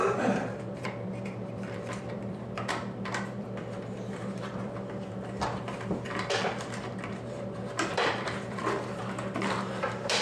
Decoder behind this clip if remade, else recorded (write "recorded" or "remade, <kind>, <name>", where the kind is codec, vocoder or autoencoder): remade, vocoder, BigVGAN v2